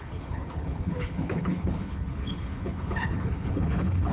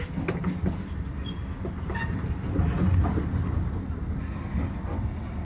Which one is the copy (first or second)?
first